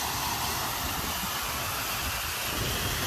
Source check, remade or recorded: recorded